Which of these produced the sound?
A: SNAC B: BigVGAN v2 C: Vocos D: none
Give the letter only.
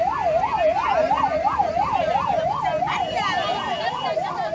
D